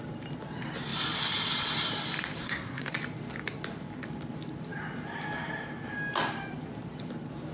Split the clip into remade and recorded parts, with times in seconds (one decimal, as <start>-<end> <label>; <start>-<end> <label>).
0.0-2.4 recorded; 2.4-2.9 remade; 2.9-7.5 recorded